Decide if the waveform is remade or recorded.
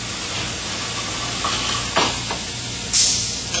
recorded